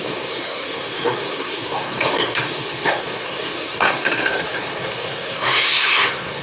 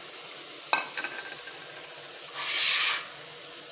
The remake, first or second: first